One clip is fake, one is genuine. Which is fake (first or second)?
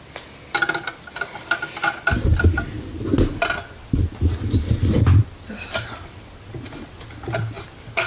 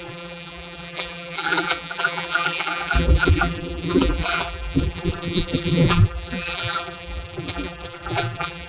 second